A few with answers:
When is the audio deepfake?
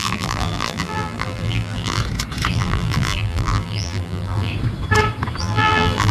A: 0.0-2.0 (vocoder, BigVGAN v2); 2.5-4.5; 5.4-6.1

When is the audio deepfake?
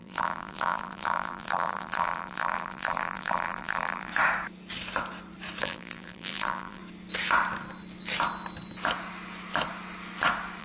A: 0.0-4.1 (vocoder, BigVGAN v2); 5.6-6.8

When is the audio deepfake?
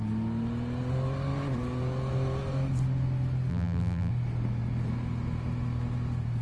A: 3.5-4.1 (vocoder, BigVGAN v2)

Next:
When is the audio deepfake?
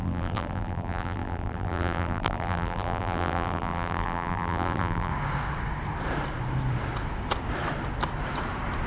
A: 0.0-5.1 (vocoder, BigVGAN v2)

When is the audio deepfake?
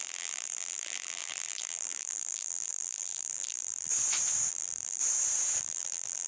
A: 0.0-3.9 (vocoder, BigVGAN v2); 4.5-5.0; 5.6-6.3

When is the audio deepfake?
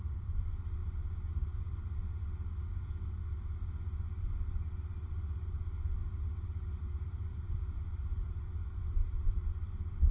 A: 0.0-0.8 (vocoder, BigVGAN v2); 5.1-6.0; 6.8-10.1